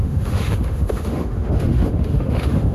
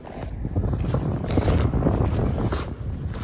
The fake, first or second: first